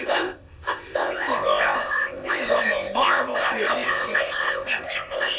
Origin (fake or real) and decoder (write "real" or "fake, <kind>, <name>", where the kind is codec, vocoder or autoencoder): fake, codec, ZipCodec